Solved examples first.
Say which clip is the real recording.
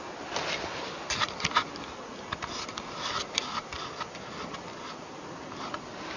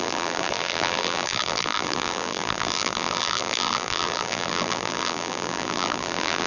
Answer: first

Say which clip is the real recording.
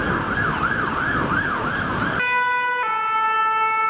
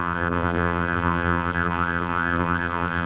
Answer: first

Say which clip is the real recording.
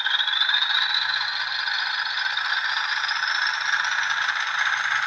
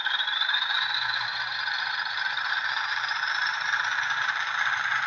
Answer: first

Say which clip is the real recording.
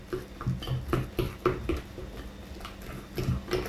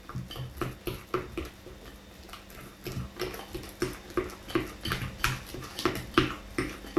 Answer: second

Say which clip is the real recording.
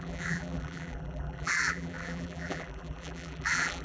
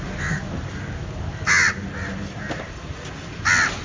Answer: second